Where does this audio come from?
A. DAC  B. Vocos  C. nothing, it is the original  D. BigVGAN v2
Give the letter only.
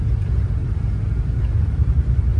C